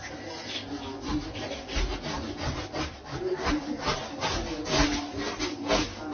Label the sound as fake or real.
real